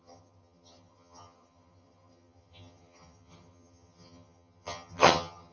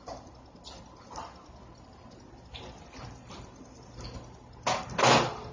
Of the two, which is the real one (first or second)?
second